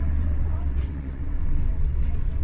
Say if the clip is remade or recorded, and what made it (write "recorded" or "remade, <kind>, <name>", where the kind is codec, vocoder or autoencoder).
remade, vocoder, WaveNeXt